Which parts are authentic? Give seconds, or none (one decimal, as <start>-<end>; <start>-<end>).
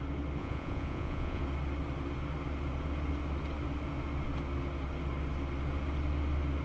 0.0-0.4; 1.4-6.6